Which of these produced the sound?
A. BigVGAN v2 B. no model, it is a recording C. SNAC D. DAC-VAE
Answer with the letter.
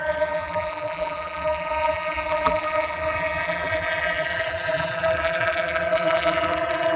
A